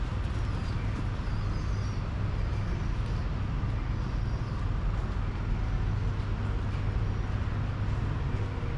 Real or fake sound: real